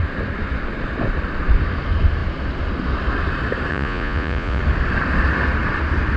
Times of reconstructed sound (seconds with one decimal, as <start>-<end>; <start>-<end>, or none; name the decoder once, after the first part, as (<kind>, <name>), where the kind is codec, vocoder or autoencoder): 3.7-4.6 (vocoder, Vocos)